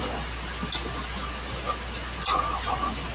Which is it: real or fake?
real